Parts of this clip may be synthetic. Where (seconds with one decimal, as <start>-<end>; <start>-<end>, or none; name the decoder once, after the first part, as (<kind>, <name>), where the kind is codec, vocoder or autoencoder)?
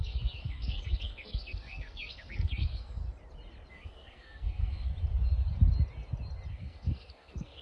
0.0-3.0 (codec, SNAC); 3.7-4.9; 6.5-7.6